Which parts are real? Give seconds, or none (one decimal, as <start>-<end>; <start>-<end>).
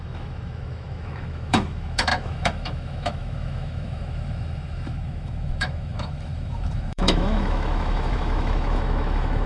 none